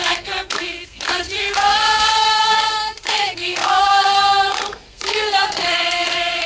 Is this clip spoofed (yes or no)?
yes